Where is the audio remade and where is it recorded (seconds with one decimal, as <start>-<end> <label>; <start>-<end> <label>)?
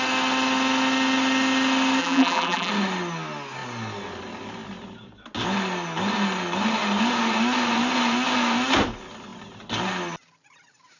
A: 0.0-2.0 recorded; 2.0-2.7 remade; 2.7-11.0 recorded